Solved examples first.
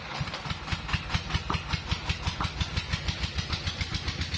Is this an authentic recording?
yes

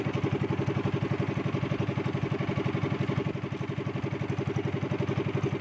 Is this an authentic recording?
yes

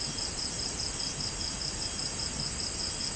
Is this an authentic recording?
yes